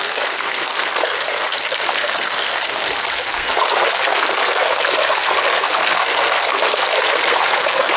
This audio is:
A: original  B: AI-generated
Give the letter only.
B